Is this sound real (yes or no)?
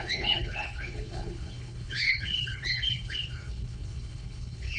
no